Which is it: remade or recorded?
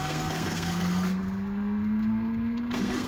remade